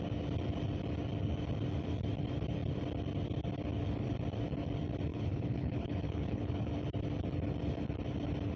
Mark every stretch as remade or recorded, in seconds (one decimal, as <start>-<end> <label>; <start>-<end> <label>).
0.0-5.1 recorded; 5.1-6.7 remade; 6.7-8.6 recorded